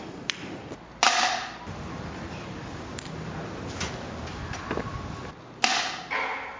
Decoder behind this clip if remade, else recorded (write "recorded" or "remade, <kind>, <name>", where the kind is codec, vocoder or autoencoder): recorded